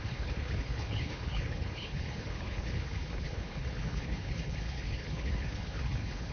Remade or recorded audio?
remade